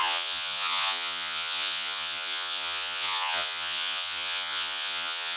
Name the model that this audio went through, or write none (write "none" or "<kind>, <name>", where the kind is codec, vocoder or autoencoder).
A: vocoder, Vocos